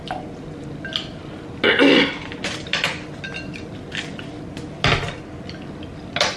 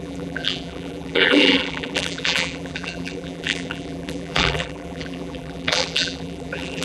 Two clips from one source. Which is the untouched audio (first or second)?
first